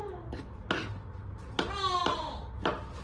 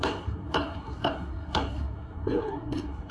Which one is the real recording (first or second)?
first